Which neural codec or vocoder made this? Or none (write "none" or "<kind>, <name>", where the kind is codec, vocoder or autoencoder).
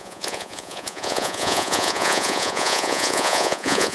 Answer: vocoder, Vocos